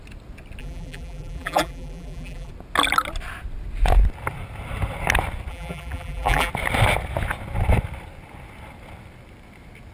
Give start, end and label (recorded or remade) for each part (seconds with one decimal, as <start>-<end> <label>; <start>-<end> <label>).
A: 0.0-0.6 recorded; 0.6-2.5 remade; 2.5-5.5 recorded; 5.5-6.5 remade; 6.5-9.9 recorded